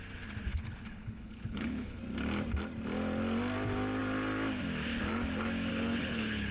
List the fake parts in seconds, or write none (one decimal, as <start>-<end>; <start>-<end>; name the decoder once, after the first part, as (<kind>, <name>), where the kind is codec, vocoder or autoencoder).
0.5-2.0 (codec, HILCodec); 5.7-6.5